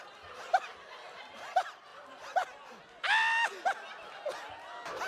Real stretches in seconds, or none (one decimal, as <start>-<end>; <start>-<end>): 0.0-5.1